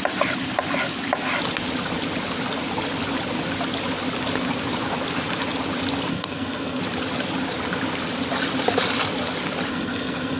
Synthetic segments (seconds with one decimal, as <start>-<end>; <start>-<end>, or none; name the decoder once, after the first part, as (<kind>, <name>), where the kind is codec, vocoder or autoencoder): 6.1-6.8 (codec, SNAC); 9.7-10.4